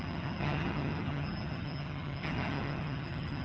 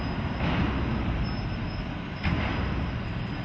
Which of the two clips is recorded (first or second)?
second